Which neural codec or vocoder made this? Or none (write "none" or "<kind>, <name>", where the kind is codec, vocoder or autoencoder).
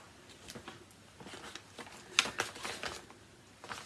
none